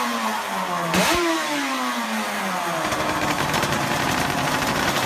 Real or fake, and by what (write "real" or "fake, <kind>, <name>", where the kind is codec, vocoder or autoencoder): fake, vocoder, BigVGAN v2